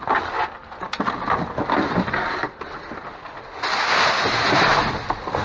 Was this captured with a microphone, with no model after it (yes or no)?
yes